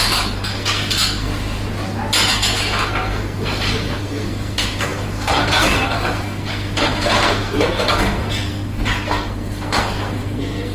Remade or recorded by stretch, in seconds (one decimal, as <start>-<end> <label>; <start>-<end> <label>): 0.0-1.3 remade; 1.3-2.3 recorded; 2.3-10.7 remade